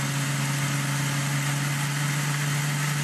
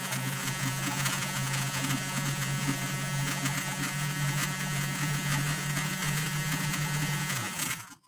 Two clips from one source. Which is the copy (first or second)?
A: second